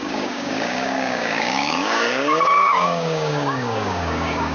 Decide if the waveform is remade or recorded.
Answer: remade